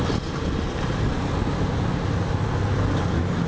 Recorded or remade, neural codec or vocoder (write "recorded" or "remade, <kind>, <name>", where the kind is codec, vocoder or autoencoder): recorded